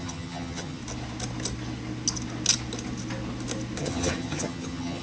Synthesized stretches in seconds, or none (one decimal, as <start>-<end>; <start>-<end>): 0.0-0.8; 3.8-5.0